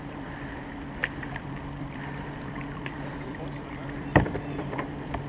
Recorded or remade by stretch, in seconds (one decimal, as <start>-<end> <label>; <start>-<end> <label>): 0.0-5.3 remade